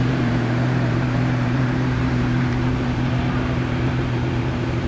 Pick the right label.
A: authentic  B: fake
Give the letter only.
B